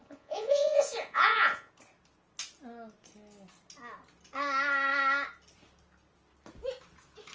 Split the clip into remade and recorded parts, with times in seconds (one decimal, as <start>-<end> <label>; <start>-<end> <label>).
0.0-1.7 remade; 1.7-7.3 recorded